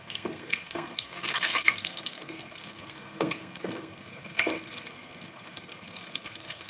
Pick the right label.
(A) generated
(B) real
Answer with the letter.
A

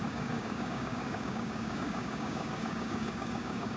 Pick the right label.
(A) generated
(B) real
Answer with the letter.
A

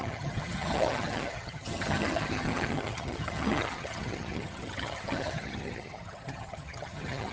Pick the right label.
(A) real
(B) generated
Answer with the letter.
B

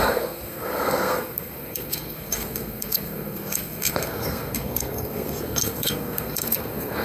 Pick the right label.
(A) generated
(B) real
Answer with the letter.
A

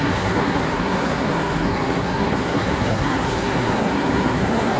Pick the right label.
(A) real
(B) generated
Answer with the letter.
B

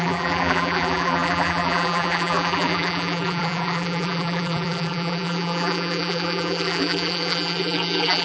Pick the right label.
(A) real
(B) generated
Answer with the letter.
B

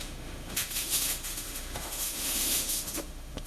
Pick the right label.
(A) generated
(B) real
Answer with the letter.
A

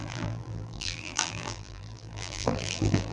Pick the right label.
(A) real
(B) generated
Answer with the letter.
B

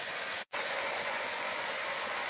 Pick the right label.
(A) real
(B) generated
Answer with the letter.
B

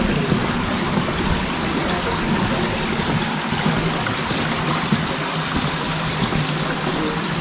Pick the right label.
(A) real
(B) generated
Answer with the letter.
A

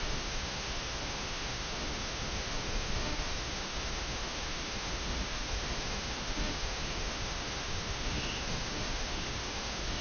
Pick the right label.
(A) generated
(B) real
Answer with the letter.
A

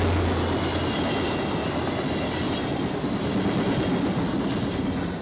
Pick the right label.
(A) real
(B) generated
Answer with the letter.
A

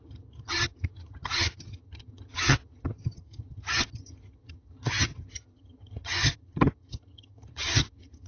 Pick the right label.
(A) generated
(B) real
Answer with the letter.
A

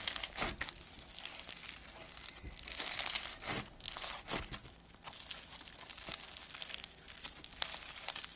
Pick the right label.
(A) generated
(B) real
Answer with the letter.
B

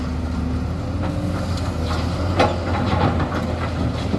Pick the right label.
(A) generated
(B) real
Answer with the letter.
B